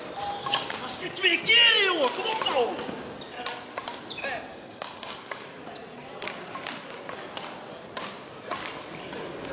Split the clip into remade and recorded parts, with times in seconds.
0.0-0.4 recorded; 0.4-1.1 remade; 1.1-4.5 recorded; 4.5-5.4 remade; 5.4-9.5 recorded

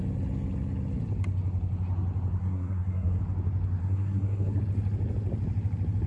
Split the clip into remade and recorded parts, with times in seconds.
0.0-2.4 recorded; 2.4-3.2 remade; 3.2-3.8 recorded; 3.8-4.6 remade; 4.6-6.1 recorded

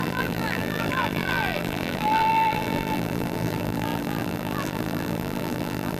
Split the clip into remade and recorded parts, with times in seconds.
0.0-6.0 remade

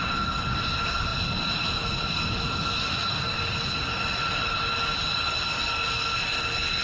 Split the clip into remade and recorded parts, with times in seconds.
0.0-6.8 recorded